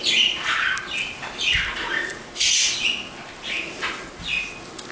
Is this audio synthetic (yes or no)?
no